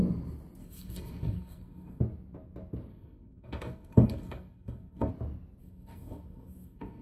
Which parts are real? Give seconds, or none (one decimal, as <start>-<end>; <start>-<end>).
0.0-0.6; 2.0-2.9; 5.1-5.6